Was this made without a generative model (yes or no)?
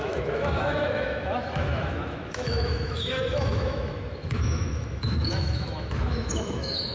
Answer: no